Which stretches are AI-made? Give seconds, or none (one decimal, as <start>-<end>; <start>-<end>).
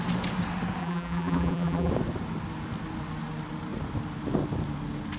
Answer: 0.8-1.9